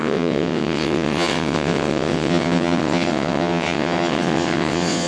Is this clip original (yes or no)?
no